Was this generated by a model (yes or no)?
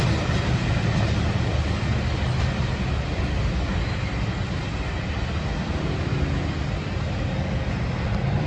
no